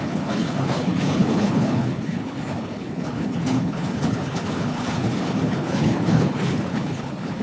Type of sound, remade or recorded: remade